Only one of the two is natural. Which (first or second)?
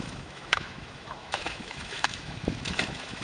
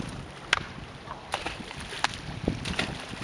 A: second